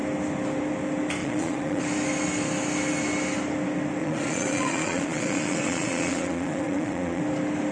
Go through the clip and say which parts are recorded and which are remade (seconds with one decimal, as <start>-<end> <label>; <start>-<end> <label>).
0.0-1.2 recorded; 1.2-1.8 remade; 1.8-4.0 recorded; 4.0-7.2 remade; 7.2-7.7 recorded